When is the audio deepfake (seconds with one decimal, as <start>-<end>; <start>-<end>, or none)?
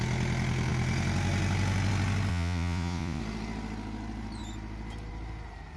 2.3-3.2